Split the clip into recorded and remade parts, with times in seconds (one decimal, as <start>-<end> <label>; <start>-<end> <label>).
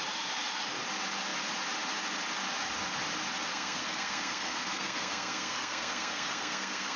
0.0-3.5 recorded; 3.5-7.0 remade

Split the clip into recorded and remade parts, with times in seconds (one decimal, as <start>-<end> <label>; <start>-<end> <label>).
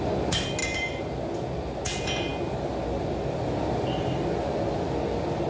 0.0-5.5 recorded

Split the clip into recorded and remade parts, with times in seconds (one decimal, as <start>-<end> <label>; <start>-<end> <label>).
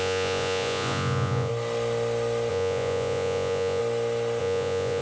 0.0-1.5 remade; 1.5-2.5 recorded; 2.5-3.8 remade; 3.8-4.4 recorded; 4.4-5.0 remade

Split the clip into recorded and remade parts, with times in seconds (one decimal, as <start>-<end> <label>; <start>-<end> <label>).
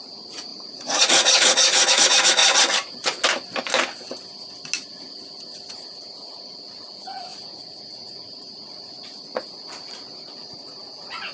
0.0-2.4 remade; 2.4-5.7 recorded; 5.7-11.3 remade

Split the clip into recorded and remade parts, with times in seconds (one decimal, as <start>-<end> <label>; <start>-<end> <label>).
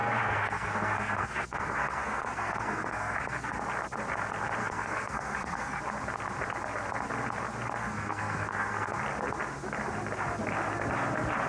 0.0-3.6 remade; 3.6-4.6 recorded; 4.6-5.8 remade; 5.8-7.8 recorded; 7.8-9.0 remade; 9.0-11.5 recorded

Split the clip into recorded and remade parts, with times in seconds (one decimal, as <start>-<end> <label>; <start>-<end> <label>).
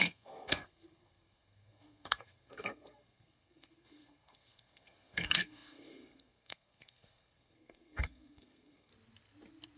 0.0-8.9 remade; 8.9-9.8 recorded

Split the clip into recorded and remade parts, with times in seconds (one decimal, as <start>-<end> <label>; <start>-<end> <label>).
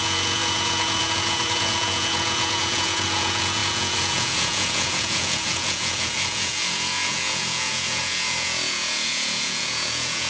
0.0-10.3 remade